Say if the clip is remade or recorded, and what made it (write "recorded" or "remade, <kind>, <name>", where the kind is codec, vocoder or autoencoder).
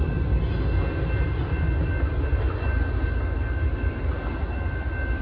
recorded